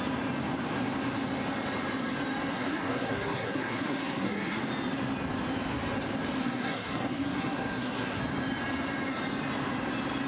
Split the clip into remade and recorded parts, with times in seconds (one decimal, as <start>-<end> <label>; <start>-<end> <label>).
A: 0.0-2.5 recorded; 2.5-4.6 remade; 4.6-6.4 recorded; 6.4-8.2 remade; 8.2-10.3 recorded